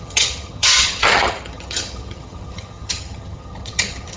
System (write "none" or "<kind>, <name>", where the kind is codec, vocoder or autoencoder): vocoder, HiFi-GAN